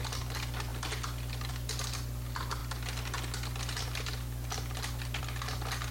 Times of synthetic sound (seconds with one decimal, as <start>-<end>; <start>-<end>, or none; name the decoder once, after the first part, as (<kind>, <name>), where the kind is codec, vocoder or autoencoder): none